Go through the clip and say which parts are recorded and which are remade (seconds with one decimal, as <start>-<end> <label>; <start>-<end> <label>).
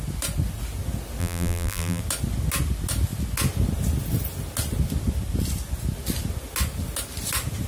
0.0-1.2 recorded; 1.2-2.0 remade; 2.0-7.7 recorded